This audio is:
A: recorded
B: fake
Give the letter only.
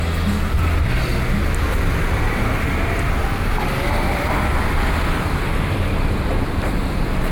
A